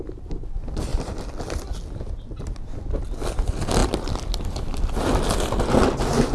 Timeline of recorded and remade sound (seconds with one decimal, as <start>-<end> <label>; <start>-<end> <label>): 0.0-3.8 recorded; 3.8-5.3 remade; 5.3-6.3 recorded